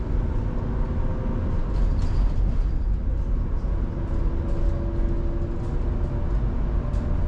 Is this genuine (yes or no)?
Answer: yes